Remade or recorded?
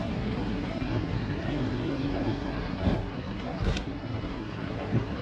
remade